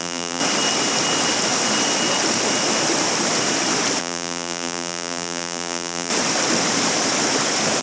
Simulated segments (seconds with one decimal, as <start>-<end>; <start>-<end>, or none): 0.0-0.4; 4.0-6.1